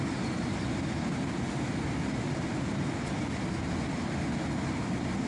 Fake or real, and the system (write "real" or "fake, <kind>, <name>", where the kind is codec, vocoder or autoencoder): real